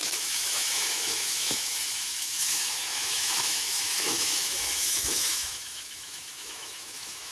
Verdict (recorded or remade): remade